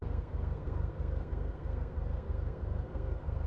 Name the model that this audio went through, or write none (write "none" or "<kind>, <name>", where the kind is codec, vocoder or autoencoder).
codec, SNAC